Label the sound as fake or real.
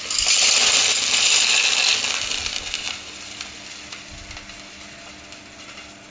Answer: real